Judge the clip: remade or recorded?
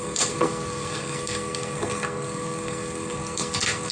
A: remade